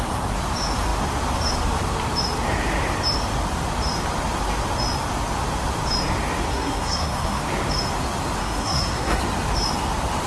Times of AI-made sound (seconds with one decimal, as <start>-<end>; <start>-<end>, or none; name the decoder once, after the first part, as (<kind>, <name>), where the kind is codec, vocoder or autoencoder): 6.5-7.4 (codec, SNAC); 8.4-9.2